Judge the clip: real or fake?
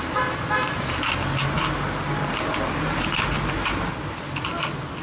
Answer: real